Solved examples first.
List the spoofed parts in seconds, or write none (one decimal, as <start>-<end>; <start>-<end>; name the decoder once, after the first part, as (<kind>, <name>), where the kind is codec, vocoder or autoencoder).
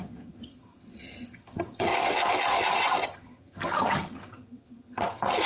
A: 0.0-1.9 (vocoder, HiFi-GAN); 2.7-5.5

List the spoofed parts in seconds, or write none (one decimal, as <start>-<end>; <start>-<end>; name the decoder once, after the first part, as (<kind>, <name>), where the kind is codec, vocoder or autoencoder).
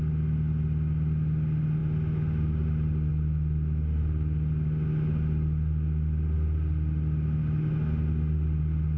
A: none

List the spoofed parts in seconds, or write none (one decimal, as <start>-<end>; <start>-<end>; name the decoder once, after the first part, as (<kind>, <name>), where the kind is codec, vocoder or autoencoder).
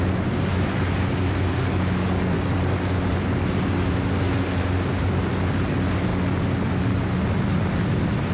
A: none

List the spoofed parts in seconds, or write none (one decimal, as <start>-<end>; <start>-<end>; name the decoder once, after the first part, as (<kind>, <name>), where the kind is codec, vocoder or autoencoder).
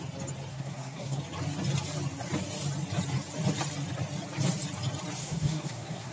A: 0.5-1.2 (codec, SNAC); 5.2-6.1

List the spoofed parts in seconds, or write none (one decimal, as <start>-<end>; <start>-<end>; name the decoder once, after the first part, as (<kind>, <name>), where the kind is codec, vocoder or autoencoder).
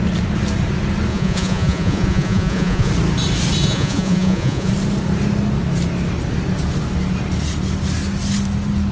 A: 1.1-2.9 (vocoder, Vocos); 3.6-4.7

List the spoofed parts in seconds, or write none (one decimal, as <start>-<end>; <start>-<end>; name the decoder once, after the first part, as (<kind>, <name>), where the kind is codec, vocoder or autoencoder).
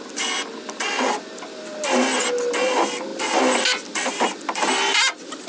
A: none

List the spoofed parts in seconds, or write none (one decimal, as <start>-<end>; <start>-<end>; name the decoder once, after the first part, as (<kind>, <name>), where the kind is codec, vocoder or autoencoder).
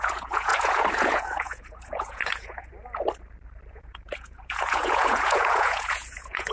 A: 0.0-2.7 (vocoder, Vocos); 3.7-6.5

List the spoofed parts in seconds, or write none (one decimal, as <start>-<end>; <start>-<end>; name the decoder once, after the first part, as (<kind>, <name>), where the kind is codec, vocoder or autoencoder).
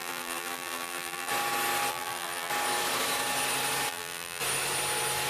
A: 0.0-1.3 (vocoder, BigVGAN v2); 1.9-2.5; 3.9-4.4